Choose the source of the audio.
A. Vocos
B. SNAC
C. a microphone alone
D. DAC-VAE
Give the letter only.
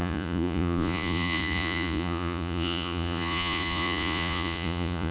A